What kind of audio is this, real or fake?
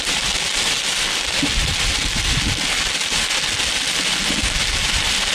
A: real